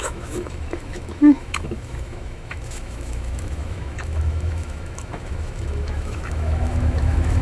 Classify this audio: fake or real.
fake